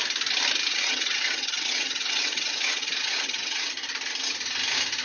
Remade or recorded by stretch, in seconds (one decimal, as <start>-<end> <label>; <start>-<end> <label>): 0.0-0.7 recorded; 0.7-3.7 remade; 3.7-5.0 recorded